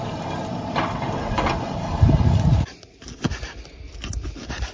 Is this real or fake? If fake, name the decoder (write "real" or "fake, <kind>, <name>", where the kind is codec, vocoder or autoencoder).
real